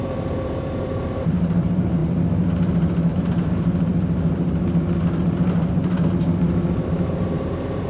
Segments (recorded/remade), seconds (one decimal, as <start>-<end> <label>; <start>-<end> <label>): 0.0-2.0 remade; 2.0-3.2 recorded; 3.2-3.9 remade; 3.9-6.7 recorded; 6.7-7.9 remade